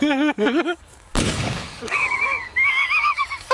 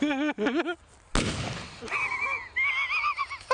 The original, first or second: second